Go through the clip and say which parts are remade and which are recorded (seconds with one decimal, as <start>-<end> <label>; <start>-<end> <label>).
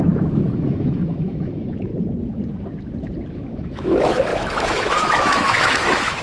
0.0-1.9 remade; 1.9-3.3 recorded; 3.3-6.2 remade